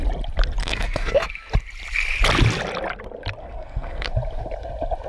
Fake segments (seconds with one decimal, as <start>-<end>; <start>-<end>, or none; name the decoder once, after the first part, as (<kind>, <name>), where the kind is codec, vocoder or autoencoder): 0.6-1.1 (codec, SNAC); 3.4-4.1